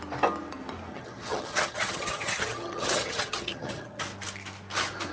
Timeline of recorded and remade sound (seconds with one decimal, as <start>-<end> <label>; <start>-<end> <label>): 0.0-0.9 recorded; 0.9-4.0 remade; 4.0-5.1 recorded